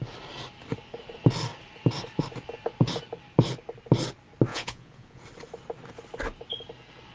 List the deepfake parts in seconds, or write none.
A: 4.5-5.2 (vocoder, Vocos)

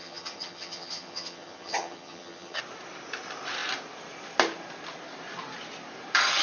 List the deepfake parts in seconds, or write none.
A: 0.0-2.6 (vocoder, HiFi-GAN)

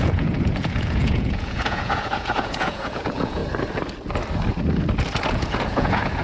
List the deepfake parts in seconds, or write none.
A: 0.0-3.4 (vocoder, Vocos); 5.3-6.2

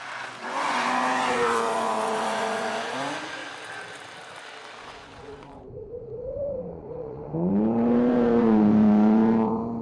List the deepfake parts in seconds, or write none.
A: 0.0-3.4 (vocoder, Vocos); 4.8-9.8

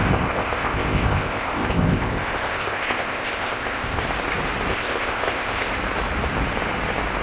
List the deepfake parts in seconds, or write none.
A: 0.0-4.0 (codec, ZipCodec); 4.7-5.7

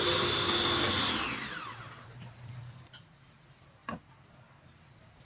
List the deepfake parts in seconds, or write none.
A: none

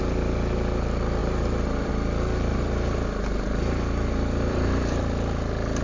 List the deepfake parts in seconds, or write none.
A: 1.2-1.9 (vocoder, BigVGAN v2); 2.5-5.0

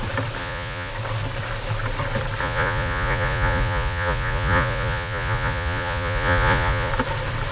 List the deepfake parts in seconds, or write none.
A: 0.4-0.9 (vocoder, Vocos); 2.4-6.9